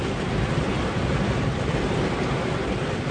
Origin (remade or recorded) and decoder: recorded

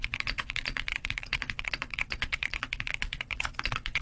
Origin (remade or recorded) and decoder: remade, vocoder, WaveNeXt